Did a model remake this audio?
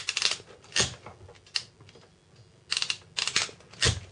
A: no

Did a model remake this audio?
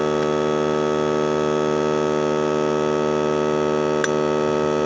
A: no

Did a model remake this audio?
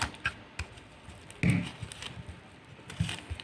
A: no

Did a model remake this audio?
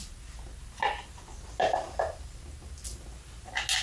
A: no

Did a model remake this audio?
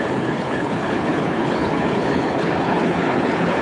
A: yes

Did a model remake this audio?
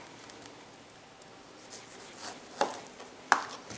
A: no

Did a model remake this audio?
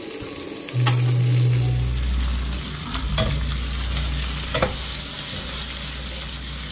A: no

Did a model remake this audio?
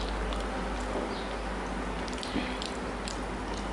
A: no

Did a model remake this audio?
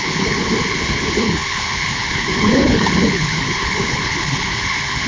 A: yes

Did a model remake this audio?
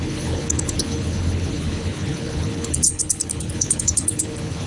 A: yes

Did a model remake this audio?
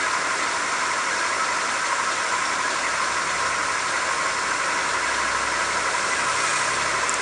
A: no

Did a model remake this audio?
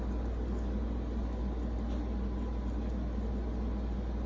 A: no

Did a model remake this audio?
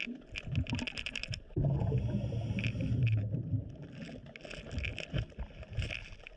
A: no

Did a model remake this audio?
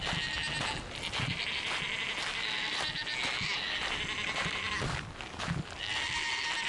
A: no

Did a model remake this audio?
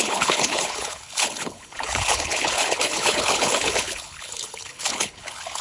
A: yes